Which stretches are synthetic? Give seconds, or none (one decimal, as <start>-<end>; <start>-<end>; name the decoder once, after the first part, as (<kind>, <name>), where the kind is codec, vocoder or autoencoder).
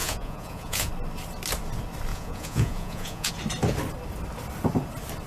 0.0-0.9 (vocoder, Vocos); 2.1-3.3